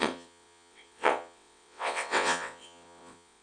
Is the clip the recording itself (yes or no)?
no